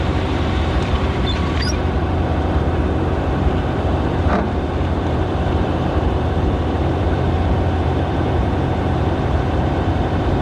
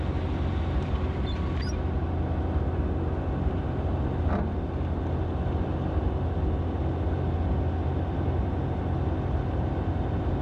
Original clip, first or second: second